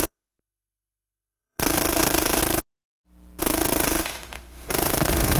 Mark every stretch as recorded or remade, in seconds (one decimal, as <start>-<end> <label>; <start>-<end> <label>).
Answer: 0.0-2.4 remade; 2.4-3.4 recorded; 3.4-5.4 remade